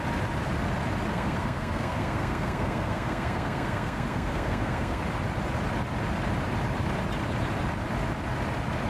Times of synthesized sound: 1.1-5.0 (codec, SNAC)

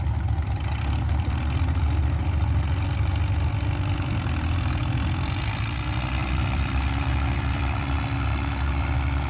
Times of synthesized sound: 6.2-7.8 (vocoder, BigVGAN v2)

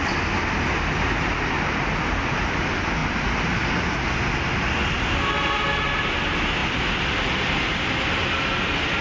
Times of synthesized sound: none